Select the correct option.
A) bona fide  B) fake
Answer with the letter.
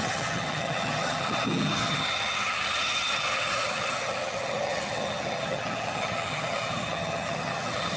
B